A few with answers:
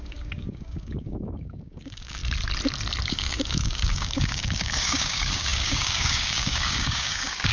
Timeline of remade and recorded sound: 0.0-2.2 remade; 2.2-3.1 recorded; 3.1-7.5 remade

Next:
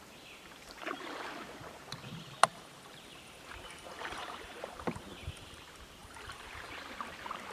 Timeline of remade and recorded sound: 0.0-2.5 recorded; 2.5-5.6 remade; 5.6-6.0 recorded; 6.0-6.7 remade; 6.7-7.5 recorded

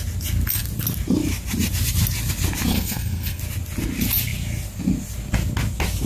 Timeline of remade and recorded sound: 0.0-2.7 recorded; 2.7-3.4 remade; 3.4-6.1 recorded

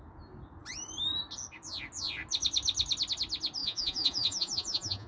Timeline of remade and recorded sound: 0.0-3.6 recorded; 3.6-5.1 remade